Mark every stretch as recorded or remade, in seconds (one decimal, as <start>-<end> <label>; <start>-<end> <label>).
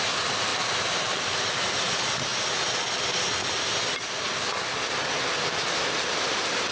0.0-2.3 remade; 2.3-6.3 recorded; 6.3-6.7 remade